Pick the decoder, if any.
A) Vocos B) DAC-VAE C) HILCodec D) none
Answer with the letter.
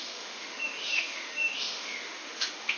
B